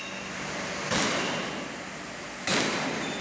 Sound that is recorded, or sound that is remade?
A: recorded